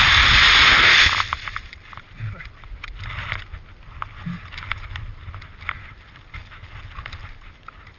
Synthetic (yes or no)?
no